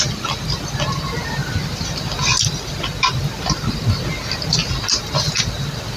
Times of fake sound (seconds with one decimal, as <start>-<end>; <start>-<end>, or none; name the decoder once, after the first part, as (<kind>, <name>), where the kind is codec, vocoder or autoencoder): none